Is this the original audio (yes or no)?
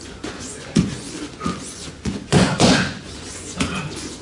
no